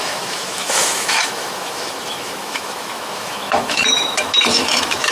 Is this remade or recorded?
remade